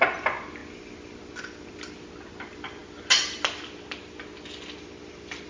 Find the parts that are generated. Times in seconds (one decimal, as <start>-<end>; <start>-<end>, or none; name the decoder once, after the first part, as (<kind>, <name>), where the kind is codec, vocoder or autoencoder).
none